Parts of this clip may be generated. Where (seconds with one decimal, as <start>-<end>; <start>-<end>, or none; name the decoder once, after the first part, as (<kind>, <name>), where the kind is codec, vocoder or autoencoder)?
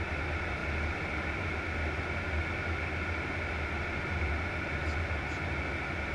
none